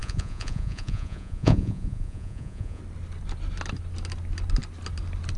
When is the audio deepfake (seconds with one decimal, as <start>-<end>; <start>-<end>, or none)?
0.0-2.8